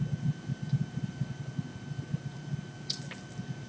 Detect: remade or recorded recorded